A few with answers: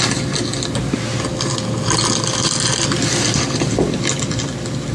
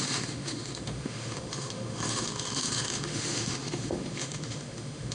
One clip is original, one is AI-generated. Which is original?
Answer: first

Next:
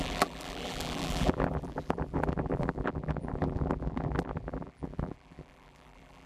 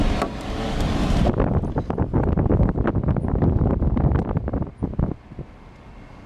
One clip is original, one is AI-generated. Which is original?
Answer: second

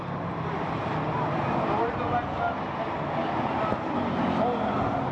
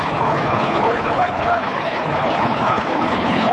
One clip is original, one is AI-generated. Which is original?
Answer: first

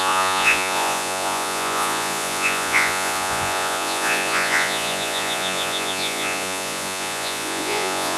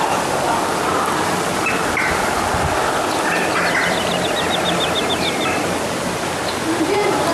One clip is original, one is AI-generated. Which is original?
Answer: second